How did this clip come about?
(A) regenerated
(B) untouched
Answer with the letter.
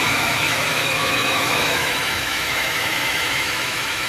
A